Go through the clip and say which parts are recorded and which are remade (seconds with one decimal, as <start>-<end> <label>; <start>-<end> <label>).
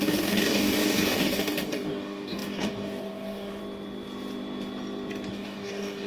0.0-3.6 remade; 3.6-5.3 recorded; 5.3-6.1 remade